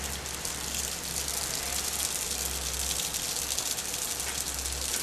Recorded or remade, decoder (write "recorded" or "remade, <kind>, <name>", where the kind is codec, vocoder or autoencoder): recorded